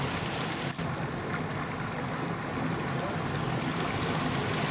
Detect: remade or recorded recorded